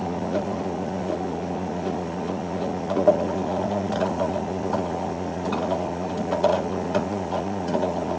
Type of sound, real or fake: fake